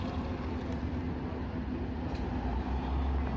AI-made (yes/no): no